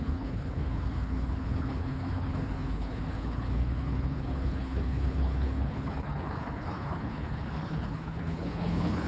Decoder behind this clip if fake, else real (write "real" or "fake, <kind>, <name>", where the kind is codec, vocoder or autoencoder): fake, codec, HILCodec